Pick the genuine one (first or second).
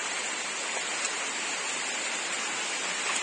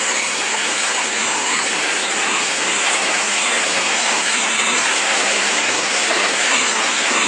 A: first